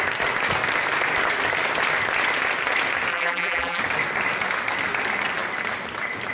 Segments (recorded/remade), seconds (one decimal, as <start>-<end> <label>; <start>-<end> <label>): 0.0-3.1 recorded; 3.1-3.8 remade; 3.8-6.3 recorded